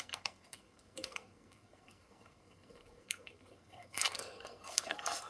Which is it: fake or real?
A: fake